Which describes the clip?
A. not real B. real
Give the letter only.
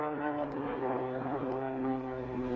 A